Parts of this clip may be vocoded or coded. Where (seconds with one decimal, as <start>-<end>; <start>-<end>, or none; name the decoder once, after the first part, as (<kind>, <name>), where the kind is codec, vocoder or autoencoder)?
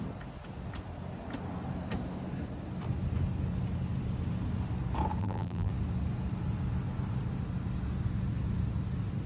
5.2-5.7 (vocoder, BigVGAN v2)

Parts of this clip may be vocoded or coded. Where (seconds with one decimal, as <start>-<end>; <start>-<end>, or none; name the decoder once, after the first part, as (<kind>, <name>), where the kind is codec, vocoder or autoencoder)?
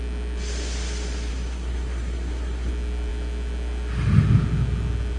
1.3-2.7 (codec, SNAC)